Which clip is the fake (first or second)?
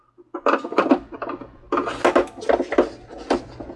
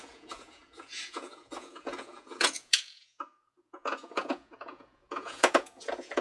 second